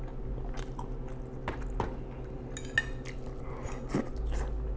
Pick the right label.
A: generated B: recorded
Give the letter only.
B